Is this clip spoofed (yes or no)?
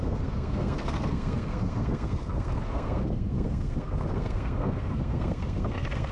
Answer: yes